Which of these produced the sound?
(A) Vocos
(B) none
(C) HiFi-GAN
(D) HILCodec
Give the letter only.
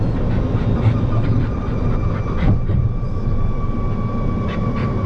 B